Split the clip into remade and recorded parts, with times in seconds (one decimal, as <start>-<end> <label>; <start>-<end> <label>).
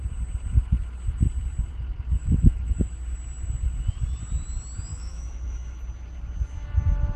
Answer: 0.0-2.2 recorded; 2.2-2.9 remade; 2.9-4.9 recorded; 4.9-5.8 remade; 5.8-7.2 recorded